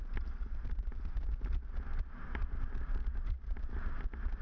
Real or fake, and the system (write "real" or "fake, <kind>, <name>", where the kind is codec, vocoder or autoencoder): real